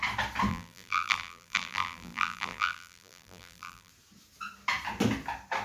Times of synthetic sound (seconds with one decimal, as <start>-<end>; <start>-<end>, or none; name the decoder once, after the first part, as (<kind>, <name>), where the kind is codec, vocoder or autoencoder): 0.5-3.9 (vocoder, BigVGAN v2)